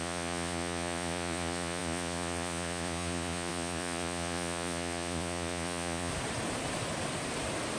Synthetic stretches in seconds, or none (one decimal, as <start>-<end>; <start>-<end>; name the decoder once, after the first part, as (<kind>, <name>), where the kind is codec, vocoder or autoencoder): 0.0-6.1 (vocoder, Vocos)